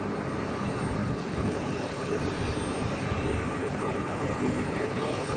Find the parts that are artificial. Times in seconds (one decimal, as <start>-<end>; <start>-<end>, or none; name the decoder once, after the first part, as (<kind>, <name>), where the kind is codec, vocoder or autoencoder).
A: 1.0-2.2 (codec, HILCodec); 3.6-5.4